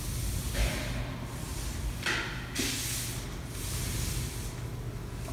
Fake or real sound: real